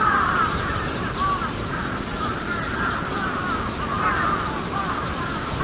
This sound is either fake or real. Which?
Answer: fake